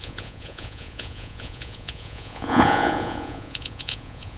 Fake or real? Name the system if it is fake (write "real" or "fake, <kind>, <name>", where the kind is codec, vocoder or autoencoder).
fake, vocoder, Vocos